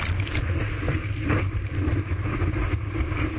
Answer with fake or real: real